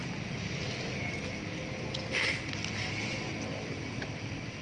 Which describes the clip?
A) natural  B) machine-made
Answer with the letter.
A